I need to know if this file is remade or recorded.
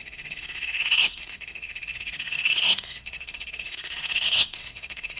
remade